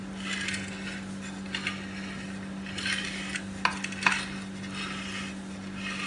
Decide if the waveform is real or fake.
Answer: real